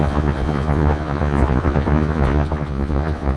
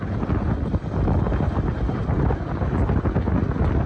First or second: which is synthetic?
first